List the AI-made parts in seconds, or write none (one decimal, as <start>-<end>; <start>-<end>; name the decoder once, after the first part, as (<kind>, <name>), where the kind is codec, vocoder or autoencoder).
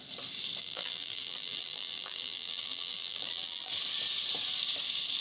0.6-3.7 (vocoder, BigVGAN v2)